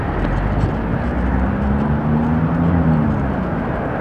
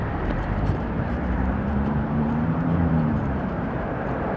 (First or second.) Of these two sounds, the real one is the first